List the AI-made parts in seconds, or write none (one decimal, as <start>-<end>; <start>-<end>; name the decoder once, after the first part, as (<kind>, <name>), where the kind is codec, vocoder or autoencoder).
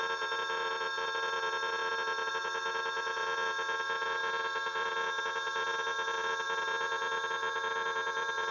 0.0-8.5 (vocoder, Vocos)